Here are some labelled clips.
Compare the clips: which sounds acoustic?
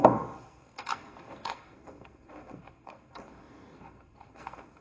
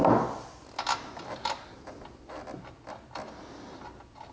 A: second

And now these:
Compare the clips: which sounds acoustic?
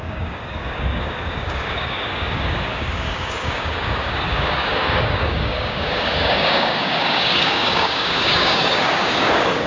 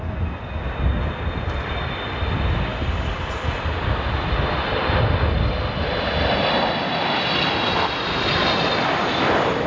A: second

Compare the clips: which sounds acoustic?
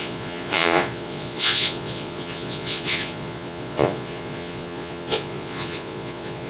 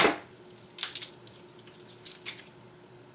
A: second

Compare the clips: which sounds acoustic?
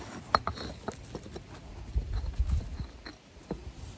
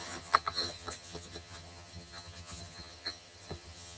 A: first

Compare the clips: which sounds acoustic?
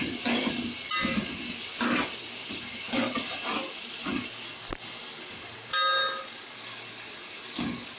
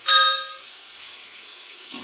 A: first